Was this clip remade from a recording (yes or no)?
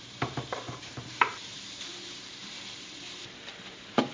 yes